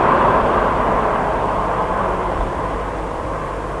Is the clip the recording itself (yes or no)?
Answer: no